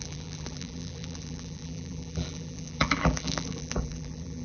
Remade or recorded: remade